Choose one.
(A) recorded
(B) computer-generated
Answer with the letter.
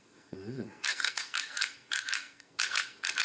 B